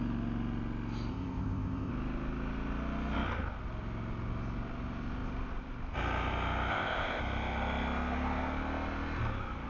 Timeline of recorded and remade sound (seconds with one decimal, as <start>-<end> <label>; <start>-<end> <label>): 0.0-1.1 recorded; 1.1-1.9 remade; 1.9-6.7 recorded; 6.7-7.2 remade; 7.2-9.7 recorded